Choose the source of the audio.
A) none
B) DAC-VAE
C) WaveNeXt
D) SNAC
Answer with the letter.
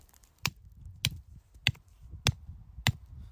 A